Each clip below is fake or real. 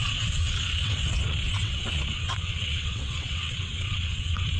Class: fake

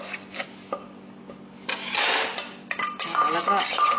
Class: real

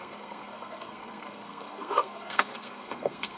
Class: fake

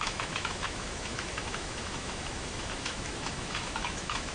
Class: fake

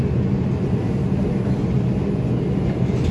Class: real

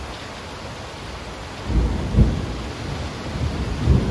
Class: real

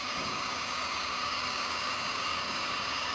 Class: fake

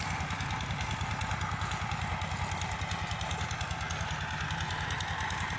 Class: real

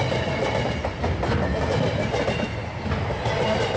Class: real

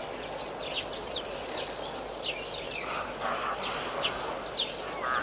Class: real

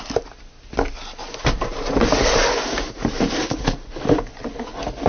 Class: real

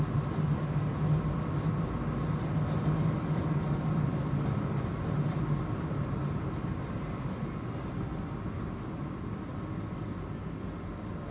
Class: real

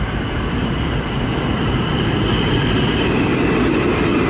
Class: fake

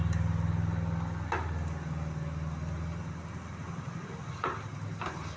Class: real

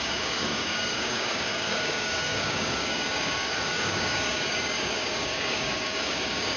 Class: fake